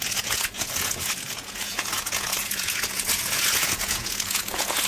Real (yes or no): no